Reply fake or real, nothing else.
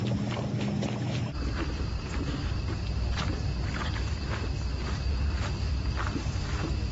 real